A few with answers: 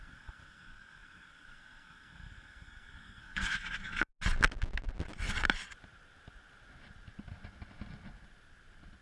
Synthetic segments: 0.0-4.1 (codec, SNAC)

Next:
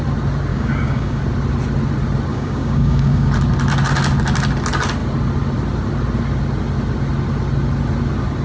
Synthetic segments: 0.5-1.2 (codec, DAC); 2.3-3.3

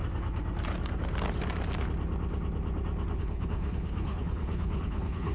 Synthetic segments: 3.2-5.3 (codec, HILCodec)